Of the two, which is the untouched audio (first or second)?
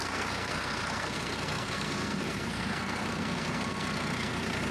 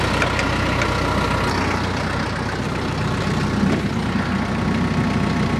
second